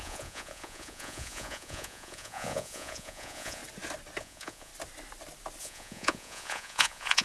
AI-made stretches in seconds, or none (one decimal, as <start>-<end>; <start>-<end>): 0.0-3.6; 4.2-4.7; 5.6-7.2